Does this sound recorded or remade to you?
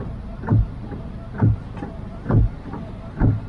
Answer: remade